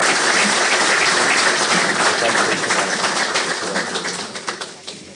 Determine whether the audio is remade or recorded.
recorded